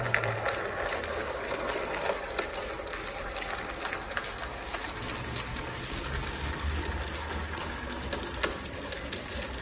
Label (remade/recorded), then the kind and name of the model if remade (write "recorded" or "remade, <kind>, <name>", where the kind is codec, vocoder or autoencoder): recorded